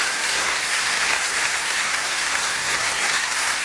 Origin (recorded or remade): remade